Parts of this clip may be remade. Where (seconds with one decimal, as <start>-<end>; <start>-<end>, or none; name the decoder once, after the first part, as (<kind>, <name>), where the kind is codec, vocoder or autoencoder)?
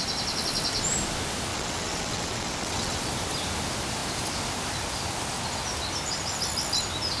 1.5-3.0 (vocoder, WaveNeXt)